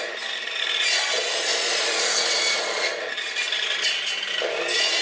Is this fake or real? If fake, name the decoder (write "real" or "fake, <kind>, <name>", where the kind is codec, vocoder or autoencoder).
real